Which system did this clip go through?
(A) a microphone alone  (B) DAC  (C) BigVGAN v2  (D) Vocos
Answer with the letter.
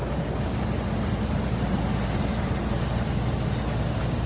A